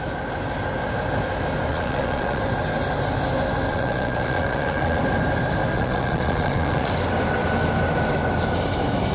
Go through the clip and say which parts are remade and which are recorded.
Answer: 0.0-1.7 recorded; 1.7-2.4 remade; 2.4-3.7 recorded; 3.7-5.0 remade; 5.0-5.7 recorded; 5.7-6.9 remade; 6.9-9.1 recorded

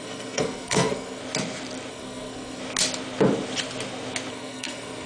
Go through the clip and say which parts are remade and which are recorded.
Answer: 0.0-1.2 remade; 1.2-1.9 recorded; 1.9-2.6 remade; 2.6-4.3 recorded; 4.3-5.1 remade